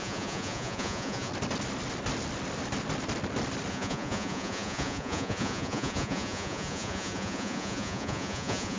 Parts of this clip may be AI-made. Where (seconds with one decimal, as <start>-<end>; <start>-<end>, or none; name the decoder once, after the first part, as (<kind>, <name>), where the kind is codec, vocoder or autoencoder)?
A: 0.0-1.3 (vocoder, Vocos); 3.7-8.8